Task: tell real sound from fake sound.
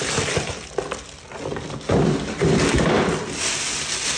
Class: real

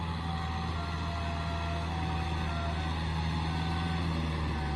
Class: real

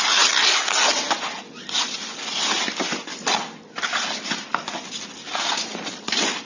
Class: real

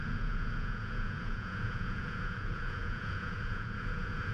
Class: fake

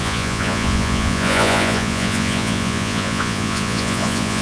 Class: fake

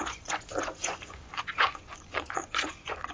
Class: fake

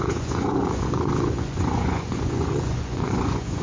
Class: fake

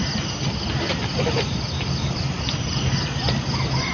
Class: real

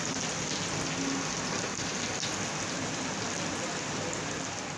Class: real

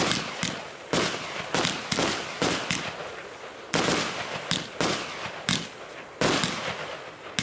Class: real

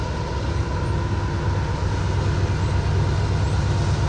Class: real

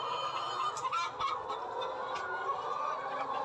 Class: real